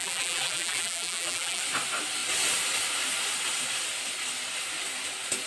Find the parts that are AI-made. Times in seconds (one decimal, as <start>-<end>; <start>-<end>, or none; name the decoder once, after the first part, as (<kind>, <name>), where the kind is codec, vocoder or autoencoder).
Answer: 0.0-1.6 (vocoder, BigVGAN v2)